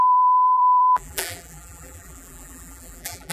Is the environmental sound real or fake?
fake